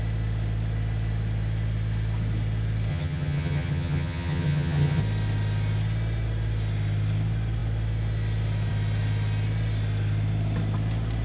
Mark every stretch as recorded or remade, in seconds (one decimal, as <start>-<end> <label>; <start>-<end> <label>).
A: 0.0-2.9 recorded; 2.9-5.0 remade; 5.0-11.2 recorded